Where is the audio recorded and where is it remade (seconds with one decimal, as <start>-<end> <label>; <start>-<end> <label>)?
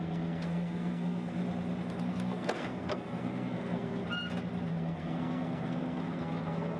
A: 0.0-1.4 remade; 1.4-2.1 recorded; 2.1-4.0 remade; 4.0-4.7 recorded; 4.7-6.8 remade